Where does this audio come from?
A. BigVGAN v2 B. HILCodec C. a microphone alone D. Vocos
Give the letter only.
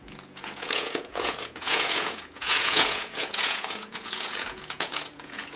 D